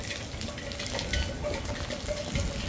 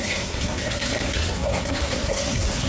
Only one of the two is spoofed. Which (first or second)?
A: second